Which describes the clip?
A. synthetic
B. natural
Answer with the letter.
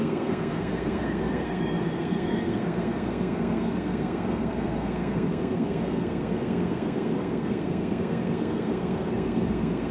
A